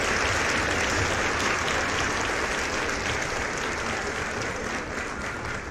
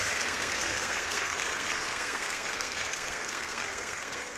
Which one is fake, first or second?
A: second